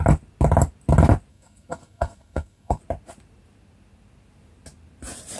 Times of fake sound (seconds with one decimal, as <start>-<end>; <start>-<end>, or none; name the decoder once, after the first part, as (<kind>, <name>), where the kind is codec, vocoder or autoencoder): 1.3-2.8 (codec, SNAC)

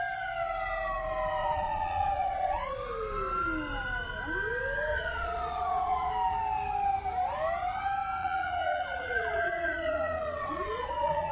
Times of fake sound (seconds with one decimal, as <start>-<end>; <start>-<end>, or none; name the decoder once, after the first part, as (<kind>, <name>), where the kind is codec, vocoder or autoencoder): 1.4-2.7 (vocoder, Vocos); 4.9-6.1; 8.2-11.3